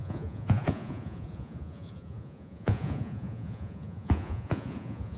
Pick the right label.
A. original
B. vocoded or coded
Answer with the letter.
B